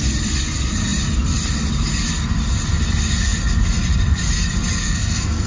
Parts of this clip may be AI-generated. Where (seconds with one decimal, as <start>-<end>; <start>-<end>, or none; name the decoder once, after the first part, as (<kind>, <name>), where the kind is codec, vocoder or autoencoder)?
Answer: 4.8-5.5 (codec, SNAC)